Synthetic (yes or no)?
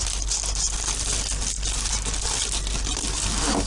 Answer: no